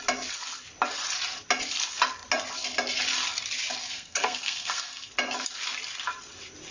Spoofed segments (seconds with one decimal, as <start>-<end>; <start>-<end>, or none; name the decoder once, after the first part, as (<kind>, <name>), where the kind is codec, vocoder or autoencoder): 3.8-5.1 (codec, SNAC)